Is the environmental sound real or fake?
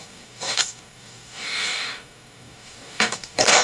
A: fake